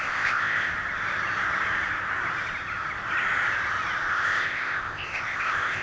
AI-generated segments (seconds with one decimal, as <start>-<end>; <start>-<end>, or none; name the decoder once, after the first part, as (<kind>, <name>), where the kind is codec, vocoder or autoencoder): 0.0-0.7 (codec, ZipCodec); 4.1-5.8